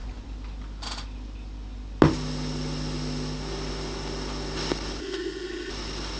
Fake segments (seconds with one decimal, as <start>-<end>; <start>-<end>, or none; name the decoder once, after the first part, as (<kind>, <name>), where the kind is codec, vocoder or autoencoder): 5.0-5.7 (codec, SNAC)